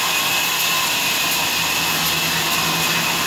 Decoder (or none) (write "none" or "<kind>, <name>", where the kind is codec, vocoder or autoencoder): none